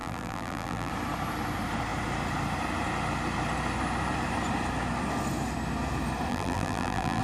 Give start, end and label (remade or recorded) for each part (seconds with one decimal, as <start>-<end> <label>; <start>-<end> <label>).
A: 0.0-0.9 remade; 0.9-6.3 recorded; 6.3-7.2 remade